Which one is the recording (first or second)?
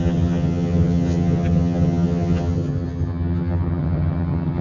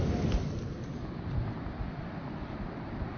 second